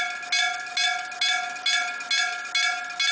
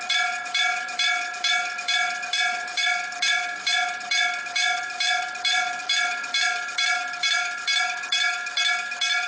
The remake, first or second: second